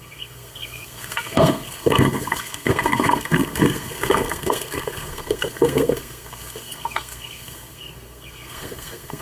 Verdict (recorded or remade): remade